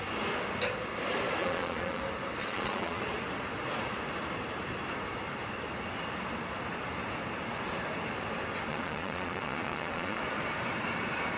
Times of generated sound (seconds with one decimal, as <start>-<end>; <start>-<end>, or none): 1.4-2.0; 2.4-3.0; 8.7-10.2